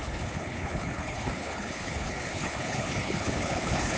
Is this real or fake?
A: fake